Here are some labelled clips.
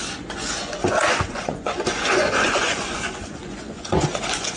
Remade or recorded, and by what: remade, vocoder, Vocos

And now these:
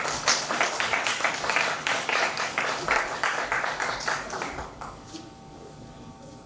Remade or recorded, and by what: remade, codec, DAC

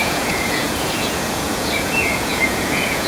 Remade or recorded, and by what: remade, vocoder, Vocos